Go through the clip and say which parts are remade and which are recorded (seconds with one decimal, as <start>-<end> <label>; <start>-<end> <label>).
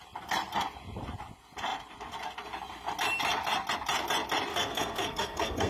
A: 0.0-4.5 recorded; 4.5-5.7 remade